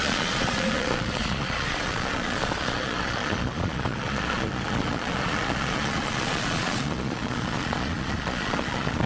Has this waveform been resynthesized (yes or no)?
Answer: yes